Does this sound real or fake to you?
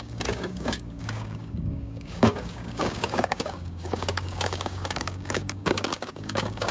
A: fake